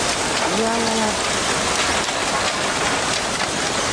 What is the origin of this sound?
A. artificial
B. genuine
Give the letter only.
B